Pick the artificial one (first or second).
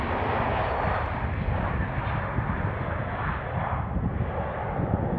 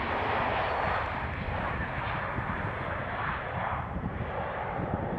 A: second